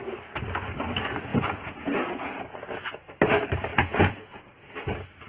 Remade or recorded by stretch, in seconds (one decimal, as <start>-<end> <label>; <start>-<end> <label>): 0.0-1.3 recorded; 1.3-3.1 remade; 3.1-3.7 recorded; 3.7-4.5 remade; 4.5-5.3 recorded